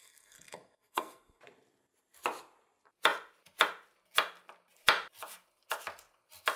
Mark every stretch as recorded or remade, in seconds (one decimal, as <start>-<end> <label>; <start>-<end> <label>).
0.0-1.4 remade; 1.4-6.6 recorded